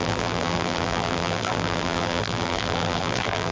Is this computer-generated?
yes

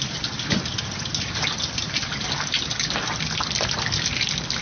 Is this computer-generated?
no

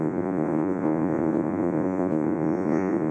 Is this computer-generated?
yes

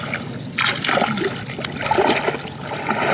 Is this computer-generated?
no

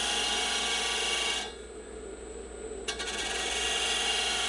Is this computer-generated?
no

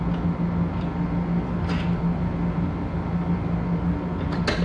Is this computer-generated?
no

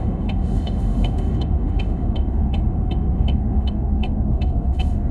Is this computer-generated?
yes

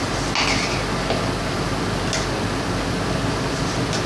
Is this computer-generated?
no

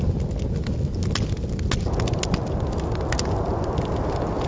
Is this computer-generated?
no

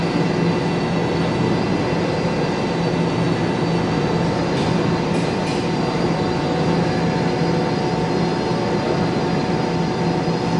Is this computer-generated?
no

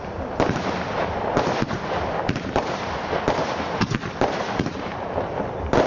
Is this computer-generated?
no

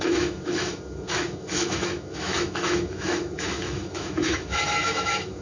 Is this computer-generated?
yes